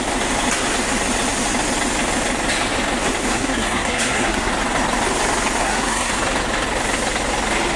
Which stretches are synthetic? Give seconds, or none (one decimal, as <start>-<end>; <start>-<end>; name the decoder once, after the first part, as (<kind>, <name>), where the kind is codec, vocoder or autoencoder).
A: 3.3-4.5 (codec, SNAC); 5.6-6.1